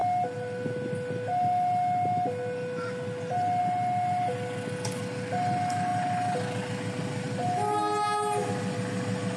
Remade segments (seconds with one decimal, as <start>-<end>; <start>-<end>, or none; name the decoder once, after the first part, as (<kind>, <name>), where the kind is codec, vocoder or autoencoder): none